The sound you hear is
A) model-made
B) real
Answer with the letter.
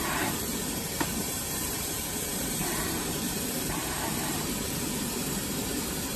A